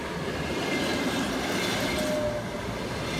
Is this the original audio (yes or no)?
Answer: yes